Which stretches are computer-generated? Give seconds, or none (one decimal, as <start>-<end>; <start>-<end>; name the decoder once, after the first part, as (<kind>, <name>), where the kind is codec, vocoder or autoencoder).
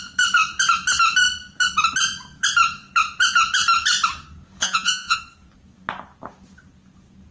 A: 4.6-5.2 (vocoder, Vocos)